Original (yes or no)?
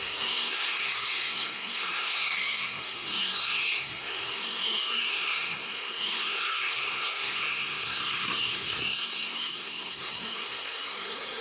no